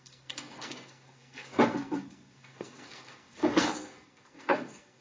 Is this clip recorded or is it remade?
remade